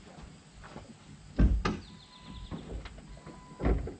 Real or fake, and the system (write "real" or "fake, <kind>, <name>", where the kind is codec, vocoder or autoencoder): real